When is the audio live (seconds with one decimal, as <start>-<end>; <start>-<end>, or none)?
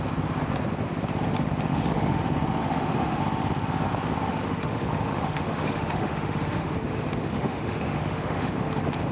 0.0-1.7; 2.2-2.6; 3.2-4.3; 6.7-7.3; 8.5-9.1